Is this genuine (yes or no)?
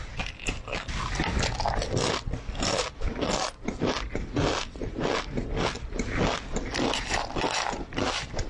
yes